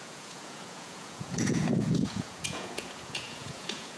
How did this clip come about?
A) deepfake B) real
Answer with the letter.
A